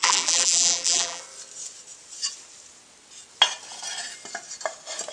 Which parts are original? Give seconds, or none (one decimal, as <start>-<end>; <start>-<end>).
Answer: 1.2-5.1